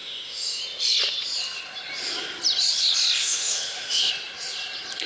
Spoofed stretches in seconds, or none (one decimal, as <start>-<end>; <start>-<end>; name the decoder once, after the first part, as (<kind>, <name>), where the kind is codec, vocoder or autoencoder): 0.0-0.6 (autoencoder, DAC-VAE); 3.2-4.1